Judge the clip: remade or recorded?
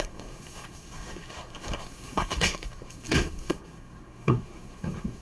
remade